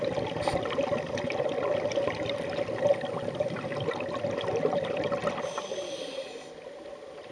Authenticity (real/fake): real